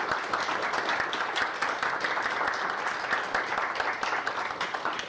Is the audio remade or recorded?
recorded